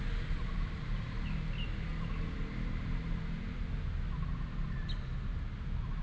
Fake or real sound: real